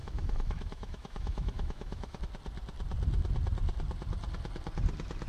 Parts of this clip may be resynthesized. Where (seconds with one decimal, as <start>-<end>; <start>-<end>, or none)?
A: 0.0-2.2